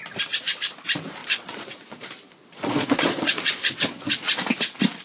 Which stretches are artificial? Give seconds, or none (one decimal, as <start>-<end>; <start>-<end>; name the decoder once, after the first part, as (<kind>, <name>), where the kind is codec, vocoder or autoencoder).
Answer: 1.2-2.0 (vocoder, Vocos); 2.4-4.2